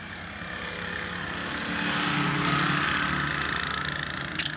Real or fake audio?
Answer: real